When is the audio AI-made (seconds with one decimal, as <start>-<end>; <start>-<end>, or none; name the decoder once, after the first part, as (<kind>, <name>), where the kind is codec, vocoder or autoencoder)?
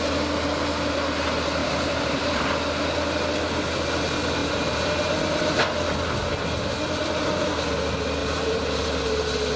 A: 1.6-2.5 (vocoder, BigVGAN v2); 4.4-5.4; 8.2-9.2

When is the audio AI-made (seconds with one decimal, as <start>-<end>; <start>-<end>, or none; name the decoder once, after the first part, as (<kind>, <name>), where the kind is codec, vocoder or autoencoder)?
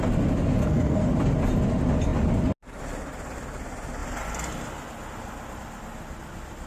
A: 0.6-1.1 (codec, SNAC)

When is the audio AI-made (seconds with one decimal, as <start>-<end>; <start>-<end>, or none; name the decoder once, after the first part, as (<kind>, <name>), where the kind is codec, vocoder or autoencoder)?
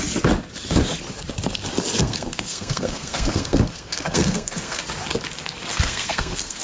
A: 2.0-4.8 (codec, SNAC); 5.7-6.6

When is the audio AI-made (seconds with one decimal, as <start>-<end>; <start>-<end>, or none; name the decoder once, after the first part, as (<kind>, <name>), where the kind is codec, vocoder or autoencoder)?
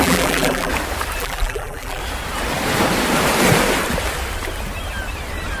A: 0.0-0.7 (vocoder, BigVGAN v2); 1.2-2.0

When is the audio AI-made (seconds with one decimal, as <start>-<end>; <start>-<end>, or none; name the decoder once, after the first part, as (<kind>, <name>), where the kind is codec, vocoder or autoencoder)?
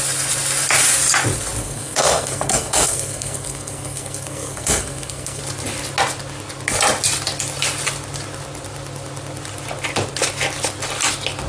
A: 1.6-5.4 (codec, SNAC)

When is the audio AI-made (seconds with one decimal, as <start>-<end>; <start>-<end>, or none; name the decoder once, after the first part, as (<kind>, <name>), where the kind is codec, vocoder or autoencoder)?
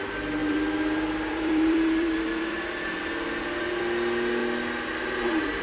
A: 0.4-3.8 (vocoder, BigVGAN v2)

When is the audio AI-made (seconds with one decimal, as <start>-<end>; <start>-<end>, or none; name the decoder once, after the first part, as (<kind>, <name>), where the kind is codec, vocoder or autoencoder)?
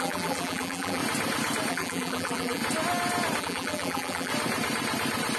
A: 0.0-1.0 (vocoder, BigVGAN v2); 1.7-2.6; 3.4-4.3